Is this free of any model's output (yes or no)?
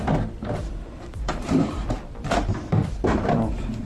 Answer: no